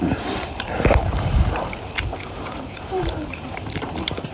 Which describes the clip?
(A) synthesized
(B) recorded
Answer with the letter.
A